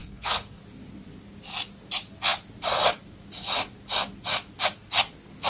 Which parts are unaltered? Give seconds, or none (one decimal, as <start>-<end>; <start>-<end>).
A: 0.6-5.5